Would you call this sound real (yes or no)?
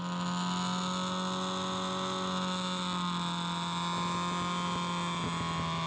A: yes